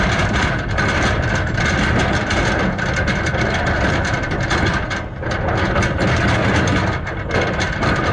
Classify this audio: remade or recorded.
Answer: recorded